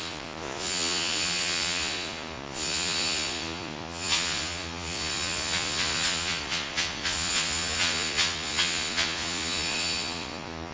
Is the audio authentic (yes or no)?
no